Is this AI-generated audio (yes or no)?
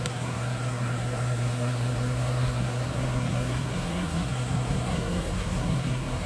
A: yes